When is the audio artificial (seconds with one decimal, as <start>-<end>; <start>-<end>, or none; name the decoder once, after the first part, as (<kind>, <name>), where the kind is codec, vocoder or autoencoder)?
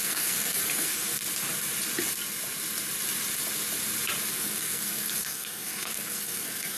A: 0.0-1.2 (codec, SNAC); 4.3-6.8